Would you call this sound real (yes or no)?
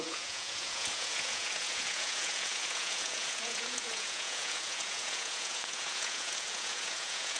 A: no